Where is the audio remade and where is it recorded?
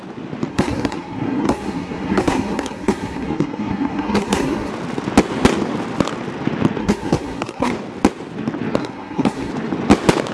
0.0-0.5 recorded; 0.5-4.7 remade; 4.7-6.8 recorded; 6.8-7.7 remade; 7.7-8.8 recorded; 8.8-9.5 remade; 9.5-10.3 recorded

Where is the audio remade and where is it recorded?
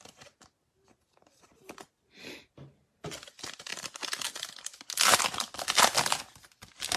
0.0-7.0 recorded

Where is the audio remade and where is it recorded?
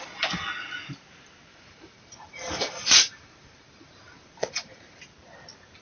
0.0-1.5 recorded; 1.5-5.0 remade; 5.0-5.8 recorded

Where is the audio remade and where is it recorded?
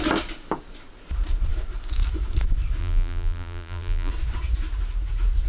0.0-2.8 recorded; 2.8-4.1 remade; 4.1-5.5 recorded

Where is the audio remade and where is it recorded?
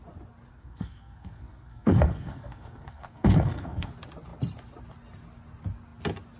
0.0-0.5 recorded; 0.5-3.9 remade; 3.9-6.4 recorded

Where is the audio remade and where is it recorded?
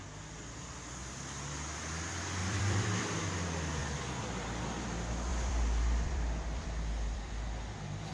0.0-2.4 recorded; 2.4-3.2 remade; 3.2-3.8 recorded; 3.8-4.6 remade; 4.6-5.3 recorded; 5.3-7.6 remade; 7.6-8.1 recorded